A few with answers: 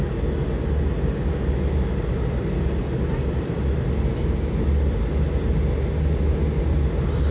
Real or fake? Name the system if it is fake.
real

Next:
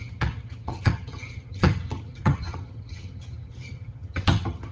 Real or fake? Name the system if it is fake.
fake, vocoder, HiFi-GAN